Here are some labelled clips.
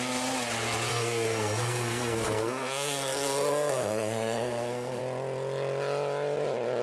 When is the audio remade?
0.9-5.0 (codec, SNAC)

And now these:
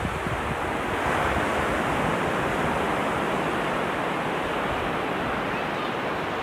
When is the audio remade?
none

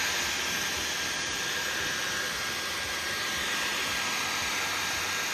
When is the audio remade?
none

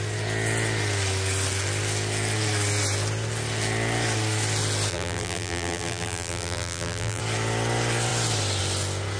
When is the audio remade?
4.9-7.2 (vocoder, BigVGAN v2)

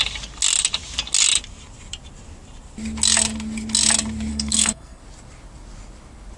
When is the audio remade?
4.3-5.0 (codec, SNAC)

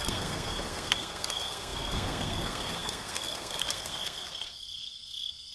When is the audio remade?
0.0-5.5 (codec, SNAC)

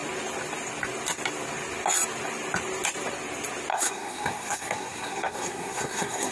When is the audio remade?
3.7-6.3 (codec, SNAC)

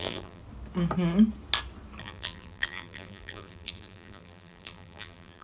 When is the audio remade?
0.0-0.4 (vocoder, BigVGAN v2); 2.0-5.4